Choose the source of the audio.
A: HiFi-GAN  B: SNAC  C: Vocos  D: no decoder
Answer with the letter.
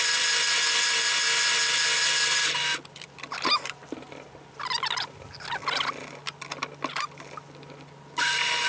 D